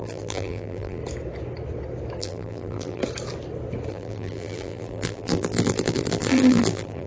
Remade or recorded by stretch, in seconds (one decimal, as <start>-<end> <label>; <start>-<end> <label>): 0.0-1.0 remade; 1.0-2.2 recorded; 2.2-3.0 remade; 3.0-3.9 recorded; 3.9-7.1 remade